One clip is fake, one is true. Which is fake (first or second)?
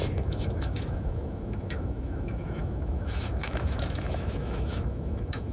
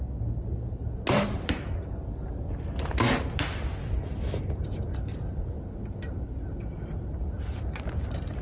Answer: first